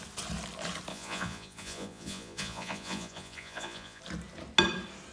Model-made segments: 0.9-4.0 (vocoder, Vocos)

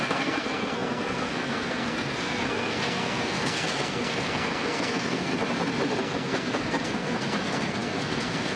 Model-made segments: 0.0-5.3 (codec, SNAC); 6.0-8.6

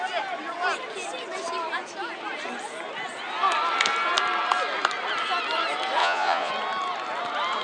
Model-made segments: 6.0-6.5 (vocoder, Vocos)